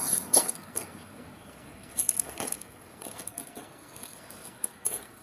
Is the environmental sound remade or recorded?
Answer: remade